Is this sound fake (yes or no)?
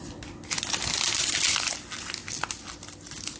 no